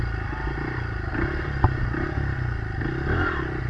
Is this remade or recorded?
recorded